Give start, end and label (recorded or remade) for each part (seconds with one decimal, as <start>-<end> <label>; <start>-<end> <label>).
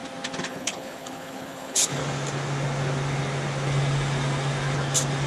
0.0-0.5 recorded; 0.5-2.0 remade; 2.0-5.3 recorded